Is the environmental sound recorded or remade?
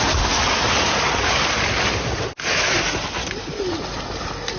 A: recorded